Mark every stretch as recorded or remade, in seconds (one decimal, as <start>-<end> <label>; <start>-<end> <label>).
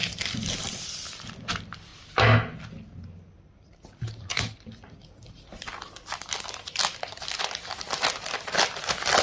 0.0-0.8 remade; 0.8-4.3 recorded; 4.3-7.4 remade; 7.4-9.2 recorded